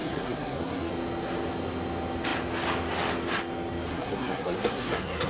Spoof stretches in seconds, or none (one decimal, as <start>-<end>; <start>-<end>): 0.0-0.9; 3.9-5.3